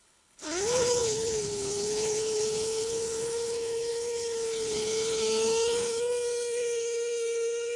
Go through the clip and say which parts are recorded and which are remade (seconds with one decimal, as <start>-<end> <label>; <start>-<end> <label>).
0.0-7.8 remade

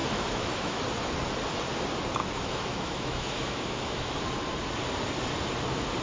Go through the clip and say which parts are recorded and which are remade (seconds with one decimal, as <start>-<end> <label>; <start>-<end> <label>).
0.0-0.8 remade; 0.8-2.2 recorded; 2.2-4.1 remade; 4.1-6.0 recorded